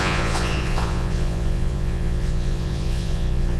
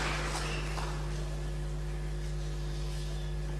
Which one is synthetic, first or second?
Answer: first